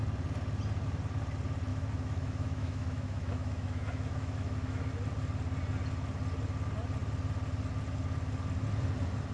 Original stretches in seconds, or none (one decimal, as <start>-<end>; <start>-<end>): 0.0-1.7; 4.9-9.3